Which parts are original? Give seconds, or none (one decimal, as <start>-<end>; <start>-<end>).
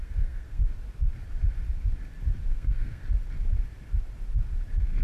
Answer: 0.6-2.5; 3.0-5.0